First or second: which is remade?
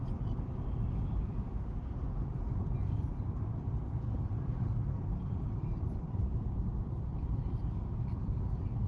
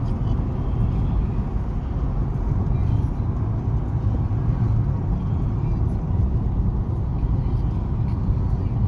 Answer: first